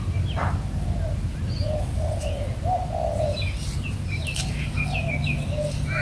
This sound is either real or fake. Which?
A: real